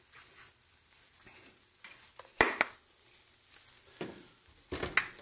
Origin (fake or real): real